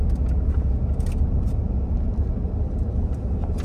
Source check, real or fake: real